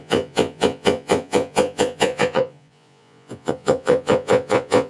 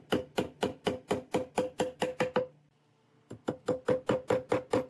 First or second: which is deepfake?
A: first